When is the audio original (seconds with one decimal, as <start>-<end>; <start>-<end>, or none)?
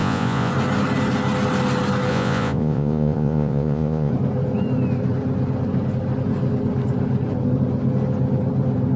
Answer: 0.5-2.1; 4.1-9.0